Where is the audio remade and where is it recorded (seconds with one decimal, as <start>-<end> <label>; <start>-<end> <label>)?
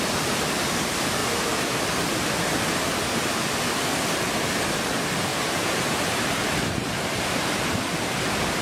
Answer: 0.0-5.3 recorded; 5.3-7.2 remade; 7.2-8.6 recorded